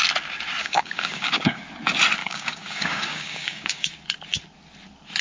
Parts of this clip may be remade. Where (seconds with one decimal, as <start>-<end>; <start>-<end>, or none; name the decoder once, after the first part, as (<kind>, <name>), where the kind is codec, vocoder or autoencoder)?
0.6-1.6 (codec, DAC); 2.2-3.9